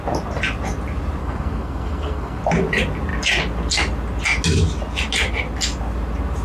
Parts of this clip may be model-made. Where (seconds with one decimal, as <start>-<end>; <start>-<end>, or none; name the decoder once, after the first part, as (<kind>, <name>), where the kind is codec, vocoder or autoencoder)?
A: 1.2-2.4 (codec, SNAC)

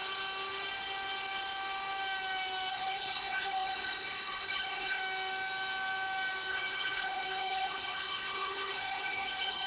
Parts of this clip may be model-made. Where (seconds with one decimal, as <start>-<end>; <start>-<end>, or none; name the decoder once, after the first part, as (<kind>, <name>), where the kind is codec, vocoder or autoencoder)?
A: 2.7-5.0 (codec, HILCodec); 6.5-9.7

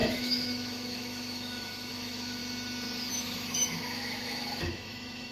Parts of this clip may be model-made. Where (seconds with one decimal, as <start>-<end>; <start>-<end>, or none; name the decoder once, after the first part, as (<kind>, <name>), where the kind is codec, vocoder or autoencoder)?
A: 0.0-2.4 (autoencoder, DAC-VAE); 3.1-5.3

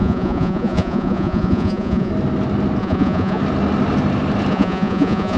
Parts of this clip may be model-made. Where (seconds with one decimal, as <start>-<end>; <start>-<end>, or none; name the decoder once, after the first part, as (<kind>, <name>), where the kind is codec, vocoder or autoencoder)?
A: 0.0-2.1 (vocoder, Vocos); 2.8-3.4; 4.5-5.4